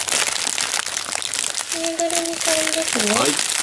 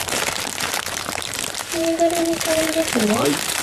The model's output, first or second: second